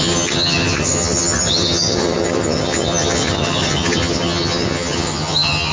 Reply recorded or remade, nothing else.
remade